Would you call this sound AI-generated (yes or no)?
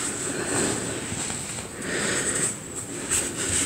no